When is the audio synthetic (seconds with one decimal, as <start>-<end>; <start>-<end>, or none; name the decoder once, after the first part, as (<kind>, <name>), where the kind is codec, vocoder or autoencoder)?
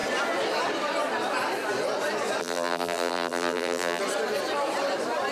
2.4-4.0 (vocoder, BigVGAN v2)